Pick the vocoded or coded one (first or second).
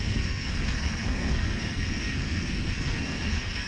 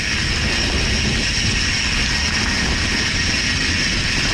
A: first